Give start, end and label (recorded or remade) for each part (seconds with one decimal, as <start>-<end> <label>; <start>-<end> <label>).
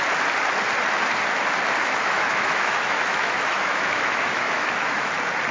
0.0-1.8 recorded; 1.8-5.1 remade; 5.1-5.5 recorded